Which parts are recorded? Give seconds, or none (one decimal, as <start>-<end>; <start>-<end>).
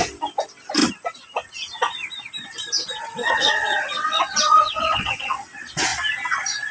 0.0-3.2; 5.4-6.7